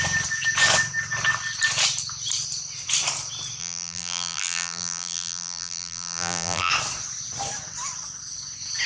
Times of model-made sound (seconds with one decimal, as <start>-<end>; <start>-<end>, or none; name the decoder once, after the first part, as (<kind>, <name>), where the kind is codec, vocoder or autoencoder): 3.6-6.7 (vocoder, BigVGAN v2)